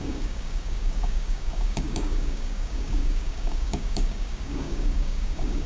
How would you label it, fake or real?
fake